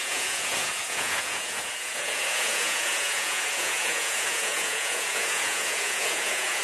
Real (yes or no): no